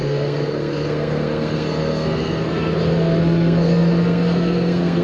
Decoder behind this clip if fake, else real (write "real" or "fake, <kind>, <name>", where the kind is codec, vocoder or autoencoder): fake, codec, SNAC